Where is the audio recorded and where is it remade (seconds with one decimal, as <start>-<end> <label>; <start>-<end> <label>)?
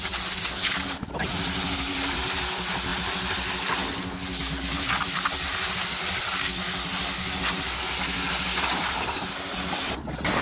0.0-10.4 recorded